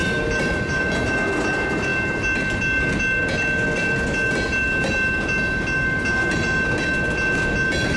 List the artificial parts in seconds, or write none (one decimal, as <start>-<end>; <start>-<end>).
0.0-0.8